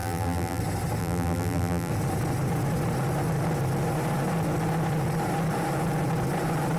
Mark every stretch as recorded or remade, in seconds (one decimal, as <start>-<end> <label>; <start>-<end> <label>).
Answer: 0.0-0.6 remade; 0.6-1.0 recorded; 1.0-1.9 remade; 1.9-6.8 recorded